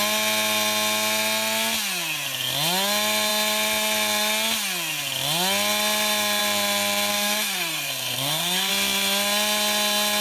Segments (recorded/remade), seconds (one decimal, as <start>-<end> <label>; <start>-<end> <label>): 0.0-7.1 recorded; 7.1-8.7 remade; 8.7-10.2 recorded